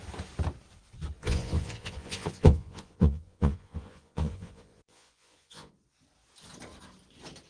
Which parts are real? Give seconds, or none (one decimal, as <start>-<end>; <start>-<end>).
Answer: 0.0-1.2; 5.7-7.5